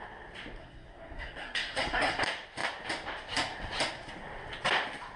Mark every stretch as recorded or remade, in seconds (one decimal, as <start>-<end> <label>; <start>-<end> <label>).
0.0-0.6 recorded; 0.6-2.2 remade; 2.2-5.2 recorded